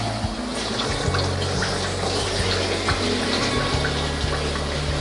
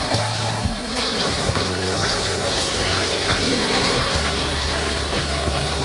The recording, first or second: first